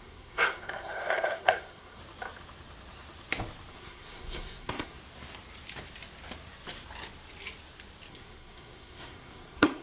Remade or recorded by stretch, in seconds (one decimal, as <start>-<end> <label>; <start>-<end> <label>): 0.0-2.0 remade; 2.0-3.7 recorded; 3.7-5.0 remade; 5.0-8.1 recorded; 8.1-9.8 remade